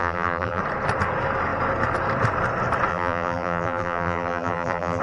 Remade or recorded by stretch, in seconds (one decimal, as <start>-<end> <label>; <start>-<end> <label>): 0.0-0.6 remade; 0.6-2.9 recorded; 2.9-5.0 remade